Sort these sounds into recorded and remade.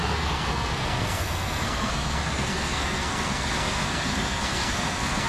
remade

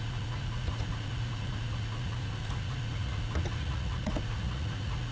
remade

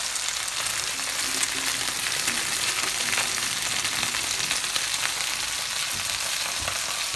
recorded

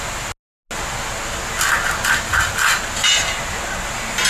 recorded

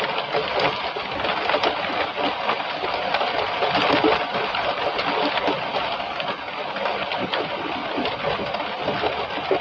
recorded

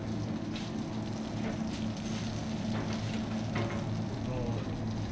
recorded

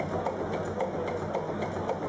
recorded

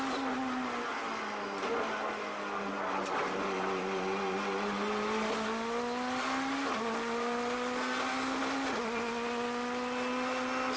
recorded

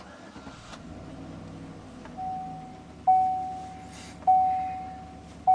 recorded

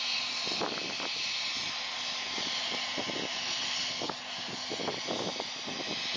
recorded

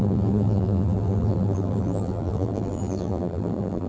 remade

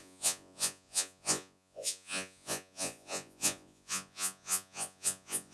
remade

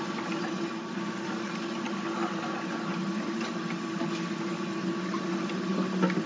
recorded